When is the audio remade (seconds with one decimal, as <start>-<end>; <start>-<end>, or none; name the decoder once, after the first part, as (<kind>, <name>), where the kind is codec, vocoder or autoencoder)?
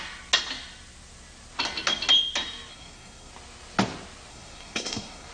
2.7-3.3 (codec, SNAC); 4.3-5.3